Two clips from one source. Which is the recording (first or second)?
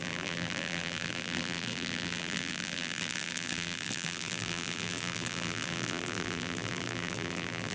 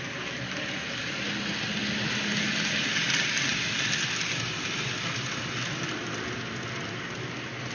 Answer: second